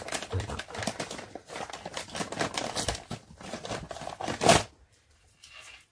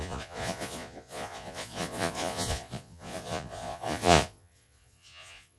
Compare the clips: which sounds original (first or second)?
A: first